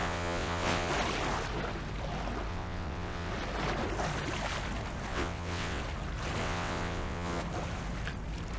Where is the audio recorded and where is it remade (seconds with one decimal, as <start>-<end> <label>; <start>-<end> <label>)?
0.0-0.9 remade; 0.9-2.5 recorded; 2.5-3.3 remade; 3.3-5.1 recorded; 5.1-5.8 remade; 5.8-6.4 recorded; 6.4-7.4 remade; 7.4-8.6 recorded